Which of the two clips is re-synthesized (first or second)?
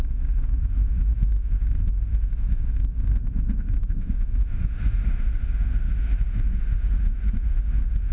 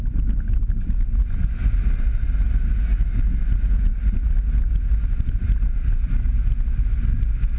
first